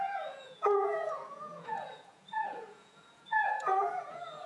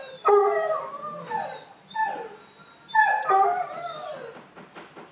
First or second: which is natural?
second